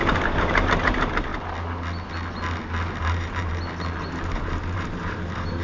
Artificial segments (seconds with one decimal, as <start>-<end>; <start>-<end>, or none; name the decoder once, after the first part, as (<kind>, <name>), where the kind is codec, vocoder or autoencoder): 0.0-1.3 (vocoder, BigVGAN v2); 3.0-3.5; 4.3-5.6